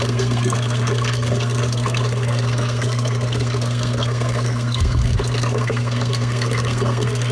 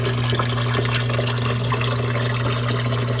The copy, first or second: first